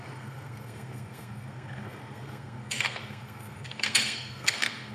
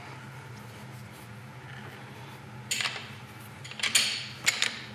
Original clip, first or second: second